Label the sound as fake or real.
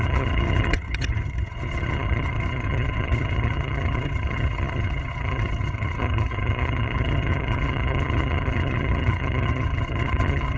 fake